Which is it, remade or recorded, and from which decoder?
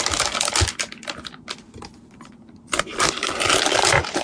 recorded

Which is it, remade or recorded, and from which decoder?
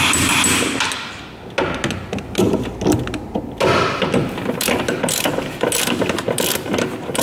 recorded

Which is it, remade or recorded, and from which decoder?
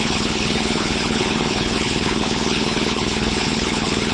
remade, codec, HILCodec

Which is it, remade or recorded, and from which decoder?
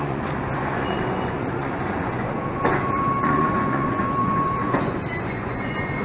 remade, vocoder, Vocos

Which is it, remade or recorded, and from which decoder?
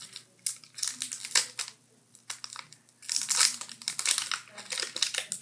recorded